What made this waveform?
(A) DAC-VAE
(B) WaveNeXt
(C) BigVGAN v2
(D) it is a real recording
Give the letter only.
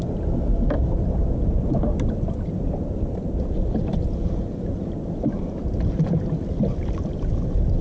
D